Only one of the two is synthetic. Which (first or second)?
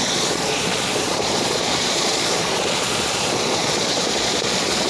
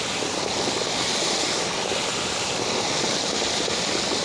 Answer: first